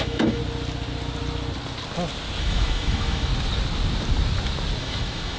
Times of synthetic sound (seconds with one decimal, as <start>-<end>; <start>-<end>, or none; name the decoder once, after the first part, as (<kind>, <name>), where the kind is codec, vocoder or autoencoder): 0.0-0.4 (autoencoder, DAC-VAE); 2.4-3.3; 4.8-5.4